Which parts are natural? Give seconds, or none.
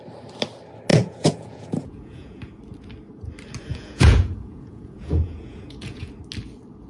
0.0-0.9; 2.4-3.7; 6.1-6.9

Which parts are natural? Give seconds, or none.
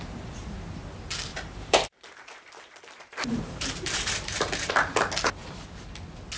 0.0-1.3; 4.7-6.4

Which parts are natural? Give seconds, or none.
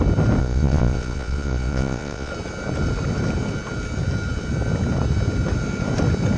0.0-0.4; 2.3-6.4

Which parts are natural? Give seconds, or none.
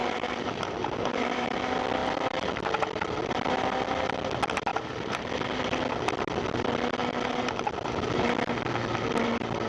1.6-4.7; 5.3-9.7